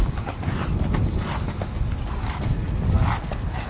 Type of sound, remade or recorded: recorded